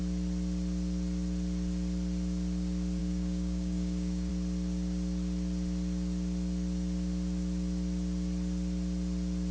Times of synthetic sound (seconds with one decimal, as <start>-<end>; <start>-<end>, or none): 3.0-4.3